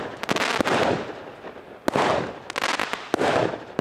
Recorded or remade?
recorded